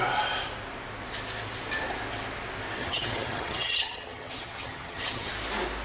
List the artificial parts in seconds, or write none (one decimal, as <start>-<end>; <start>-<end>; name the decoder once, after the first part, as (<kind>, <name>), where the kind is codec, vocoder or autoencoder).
2.8-5.3 (vocoder, HiFi-GAN)